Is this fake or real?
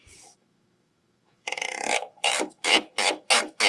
fake